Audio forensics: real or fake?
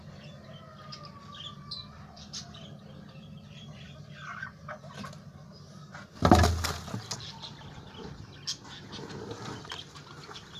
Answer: real